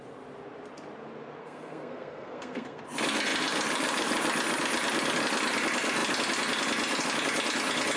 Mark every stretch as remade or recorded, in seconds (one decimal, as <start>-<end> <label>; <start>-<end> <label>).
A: 0.0-1.4 recorded; 1.4-2.8 remade; 2.8-8.0 recorded